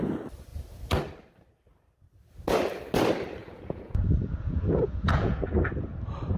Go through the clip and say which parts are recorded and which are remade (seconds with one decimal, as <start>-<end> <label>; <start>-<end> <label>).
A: 0.0-3.4 recorded; 3.4-5.4 remade; 5.4-6.4 recorded